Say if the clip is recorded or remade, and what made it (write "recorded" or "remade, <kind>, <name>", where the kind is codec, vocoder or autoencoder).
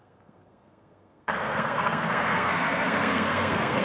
remade, codec, SNAC